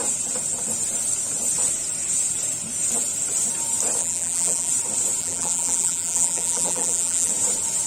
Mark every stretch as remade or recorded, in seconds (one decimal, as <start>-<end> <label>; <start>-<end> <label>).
0.0-4.0 recorded; 4.0-4.7 remade; 4.7-5.2 recorded; 5.2-7.3 remade; 7.3-7.9 recorded